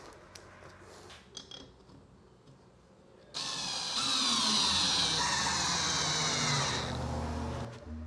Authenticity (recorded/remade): recorded